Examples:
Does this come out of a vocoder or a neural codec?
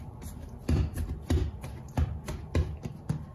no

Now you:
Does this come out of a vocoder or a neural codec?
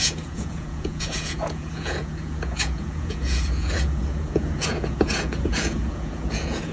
yes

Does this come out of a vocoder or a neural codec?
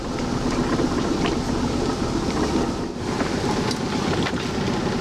no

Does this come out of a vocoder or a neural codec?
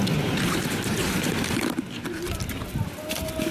no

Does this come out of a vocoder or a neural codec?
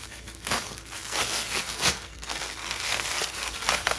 yes